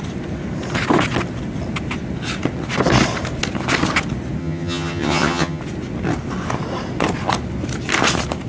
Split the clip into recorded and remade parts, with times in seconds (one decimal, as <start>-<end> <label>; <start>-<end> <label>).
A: 0.0-4.4 recorded; 4.4-5.6 remade; 5.6-8.5 recorded